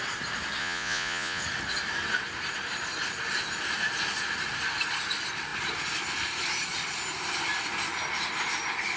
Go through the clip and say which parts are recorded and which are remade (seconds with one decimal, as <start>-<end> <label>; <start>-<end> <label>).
0.0-0.6 recorded; 0.6-1.4 remade; 1.4-9.0 recorded

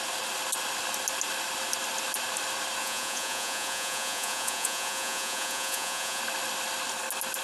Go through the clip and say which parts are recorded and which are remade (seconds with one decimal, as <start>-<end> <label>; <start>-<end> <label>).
0.0-2.8 recorded; 2.8-6.2 remade; 6.2-7.4 recorded

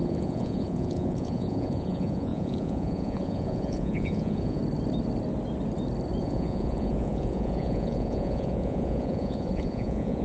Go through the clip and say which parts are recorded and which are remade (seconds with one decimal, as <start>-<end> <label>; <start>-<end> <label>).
0.0-4.6 remade; 4.6-6.2 recorded; 6.2-10.2 remade

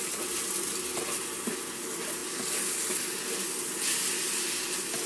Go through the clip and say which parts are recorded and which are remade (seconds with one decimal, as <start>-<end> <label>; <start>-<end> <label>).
0.0-5.1 recorded

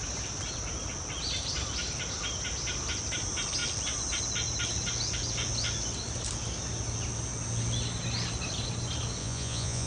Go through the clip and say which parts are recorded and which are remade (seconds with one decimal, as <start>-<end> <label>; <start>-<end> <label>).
0.0-9.2 recorded; 9.2-9.9 remade